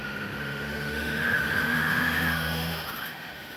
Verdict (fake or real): fake